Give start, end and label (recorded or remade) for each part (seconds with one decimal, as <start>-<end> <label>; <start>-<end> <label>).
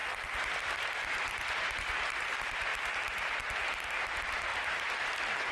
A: 0.0-2.7 remade; 2.7-4.0 recorded; 4.0-5.5 remade